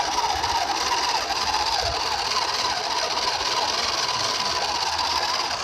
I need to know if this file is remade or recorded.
recorded